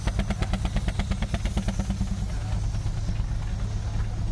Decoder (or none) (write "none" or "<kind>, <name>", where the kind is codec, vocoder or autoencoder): none